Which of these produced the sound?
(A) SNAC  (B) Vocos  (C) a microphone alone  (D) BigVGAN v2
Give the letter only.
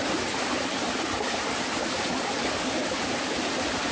D